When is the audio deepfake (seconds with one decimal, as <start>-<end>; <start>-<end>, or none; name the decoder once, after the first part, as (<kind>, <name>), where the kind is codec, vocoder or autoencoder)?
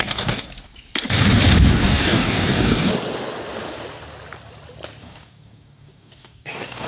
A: 0.0-0.5 (codec, DAC); 1.7-2.9; 5.0-6.9